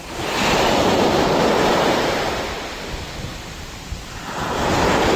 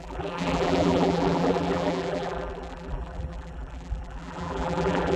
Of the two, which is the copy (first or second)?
second